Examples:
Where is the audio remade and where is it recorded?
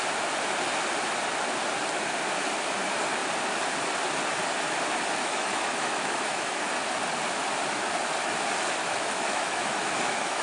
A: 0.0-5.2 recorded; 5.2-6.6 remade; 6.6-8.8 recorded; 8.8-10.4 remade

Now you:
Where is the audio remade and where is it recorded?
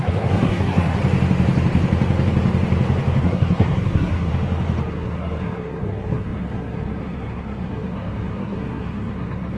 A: 0.0-1.0 remade; 1.0-3.2 recorded; 3.2-4.3 remade; 4.3-4.9 recorded; 4.9-9.6 remade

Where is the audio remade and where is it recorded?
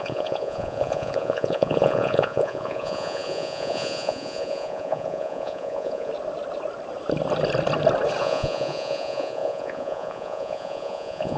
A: 0.0-6.1 remade; 6.1-8.2 recorded; 8.2-11.4 remade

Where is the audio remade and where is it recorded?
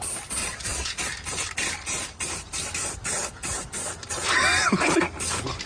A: 0.0-0.4 recorded; 0.4-1.0 remade; 1.0-5.7 recorded